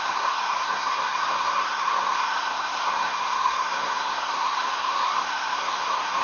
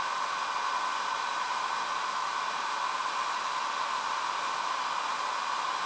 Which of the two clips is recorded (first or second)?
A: second